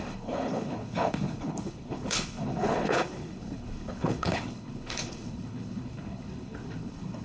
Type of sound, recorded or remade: remade